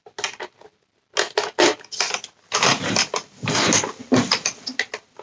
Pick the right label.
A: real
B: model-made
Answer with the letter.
A